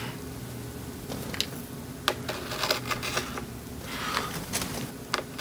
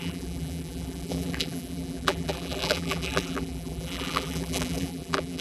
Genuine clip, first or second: first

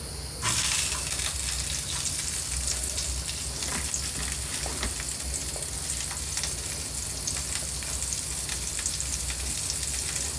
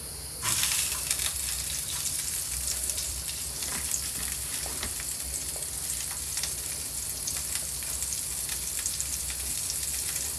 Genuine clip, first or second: first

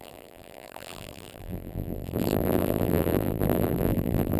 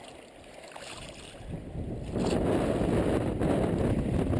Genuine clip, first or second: second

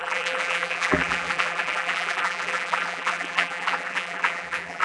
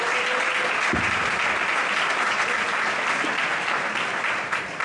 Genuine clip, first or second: second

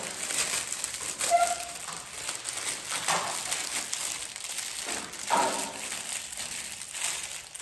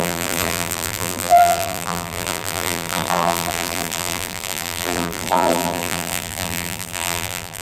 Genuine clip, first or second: first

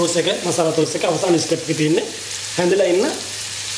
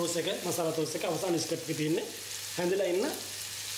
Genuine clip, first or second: second